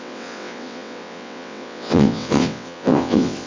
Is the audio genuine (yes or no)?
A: no